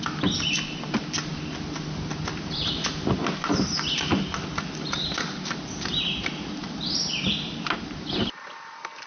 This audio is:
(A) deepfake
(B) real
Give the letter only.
B